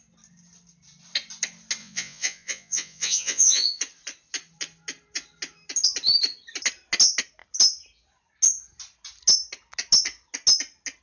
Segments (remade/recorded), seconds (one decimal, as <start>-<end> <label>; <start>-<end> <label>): 0.0-1.8 recorded; 1.8-3.8 remade; 3.8-11.0 recorded